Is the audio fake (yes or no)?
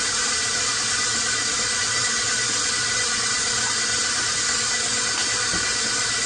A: no